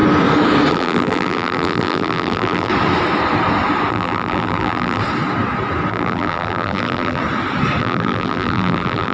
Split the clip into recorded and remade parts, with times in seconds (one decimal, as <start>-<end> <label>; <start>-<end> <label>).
0.0-0.7 recorded; 0.7-2.7 remade; 2.7-3.9 recorded; 3.9-5.0 remade; 5.0-5.9 recorded; 5.9-7.2 remade; 7.2-7.8 recorded; 7.8-9.1 remade